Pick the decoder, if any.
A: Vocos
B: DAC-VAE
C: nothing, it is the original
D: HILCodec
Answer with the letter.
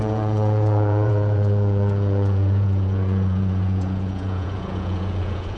A